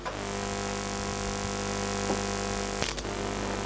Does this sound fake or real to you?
real